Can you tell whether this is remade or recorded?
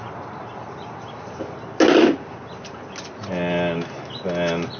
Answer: recorded